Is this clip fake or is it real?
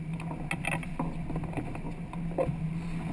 real